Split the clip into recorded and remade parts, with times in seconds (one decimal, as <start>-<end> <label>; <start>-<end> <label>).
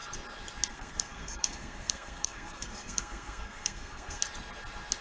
0.0-0.7 recorded; 0.7-4.2 remade; 4.2-5.0 recorded